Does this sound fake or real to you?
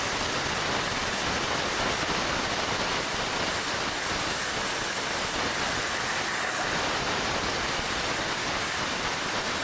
real